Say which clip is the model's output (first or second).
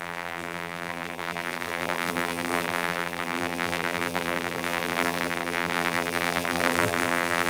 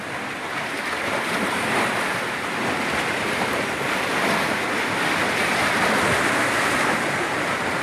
first